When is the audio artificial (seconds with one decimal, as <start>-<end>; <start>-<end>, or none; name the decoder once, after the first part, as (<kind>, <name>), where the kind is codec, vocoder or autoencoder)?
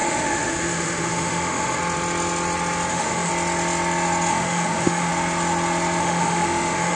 0.0-1.8 (autoencoder, DAC-VAE); 2.9-3.3; 4.3-5.1; 6.0-7.0